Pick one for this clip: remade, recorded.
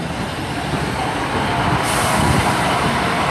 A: recorded